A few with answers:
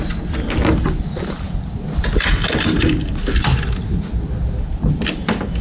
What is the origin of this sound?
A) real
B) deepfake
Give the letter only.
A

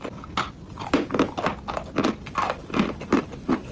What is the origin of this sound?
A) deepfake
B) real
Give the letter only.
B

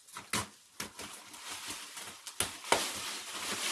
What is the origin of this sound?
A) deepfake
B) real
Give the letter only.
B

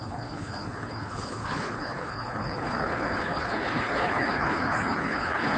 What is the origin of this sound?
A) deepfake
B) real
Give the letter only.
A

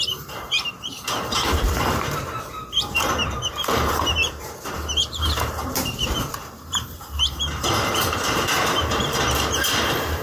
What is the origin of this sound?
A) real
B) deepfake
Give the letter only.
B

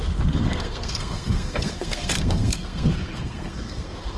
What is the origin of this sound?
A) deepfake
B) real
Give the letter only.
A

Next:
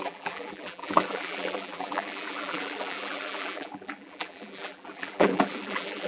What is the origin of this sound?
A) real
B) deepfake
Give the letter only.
B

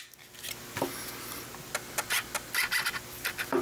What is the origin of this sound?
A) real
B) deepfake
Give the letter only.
A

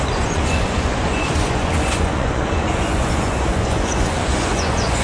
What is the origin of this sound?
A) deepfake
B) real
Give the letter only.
A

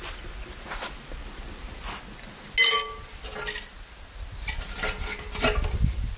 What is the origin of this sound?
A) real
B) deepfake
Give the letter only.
A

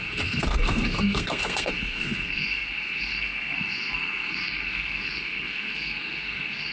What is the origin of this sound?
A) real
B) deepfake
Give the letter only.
B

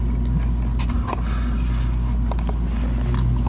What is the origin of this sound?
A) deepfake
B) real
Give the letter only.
B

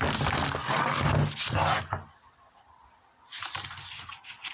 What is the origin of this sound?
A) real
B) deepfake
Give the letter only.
A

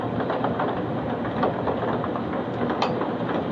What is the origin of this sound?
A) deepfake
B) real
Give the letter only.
B